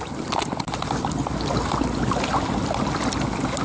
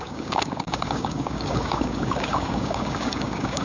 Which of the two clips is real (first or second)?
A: first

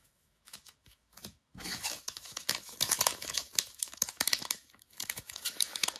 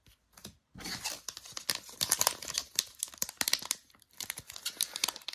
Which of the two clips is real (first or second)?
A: second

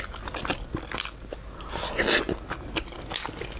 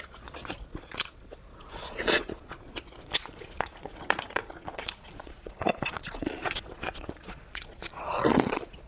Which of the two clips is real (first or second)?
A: first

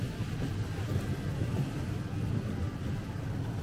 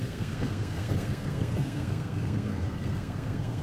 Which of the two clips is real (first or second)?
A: first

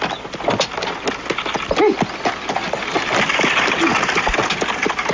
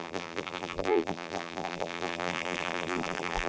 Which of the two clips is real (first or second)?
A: first